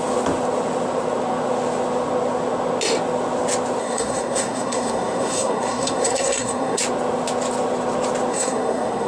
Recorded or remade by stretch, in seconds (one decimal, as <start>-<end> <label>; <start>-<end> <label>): 0.0-3.8 recorded; 3.8-6.8 remade; 6.8-8.3 recorded; 8.3-9.1 remade